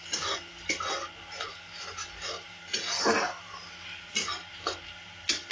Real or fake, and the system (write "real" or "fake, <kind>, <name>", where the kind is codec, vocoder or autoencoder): real